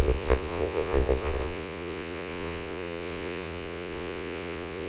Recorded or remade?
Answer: remade